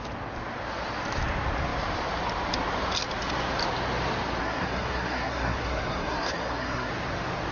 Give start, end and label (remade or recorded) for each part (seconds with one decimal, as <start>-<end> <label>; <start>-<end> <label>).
0.0-4.4 recorded; 4.4-6.9 remade; 6.9-7.5 recorded